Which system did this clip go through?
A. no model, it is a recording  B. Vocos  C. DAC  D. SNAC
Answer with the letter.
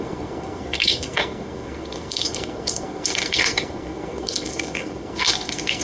D